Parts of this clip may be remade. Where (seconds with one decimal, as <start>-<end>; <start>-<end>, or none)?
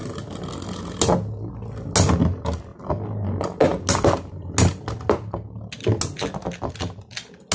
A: none